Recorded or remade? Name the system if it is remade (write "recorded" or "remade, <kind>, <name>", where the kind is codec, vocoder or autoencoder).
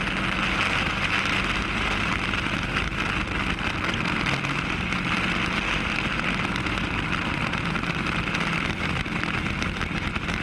recorded